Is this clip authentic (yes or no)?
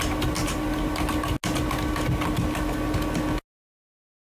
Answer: yes